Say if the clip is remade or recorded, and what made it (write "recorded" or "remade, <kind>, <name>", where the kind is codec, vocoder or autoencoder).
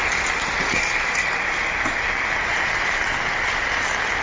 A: recorded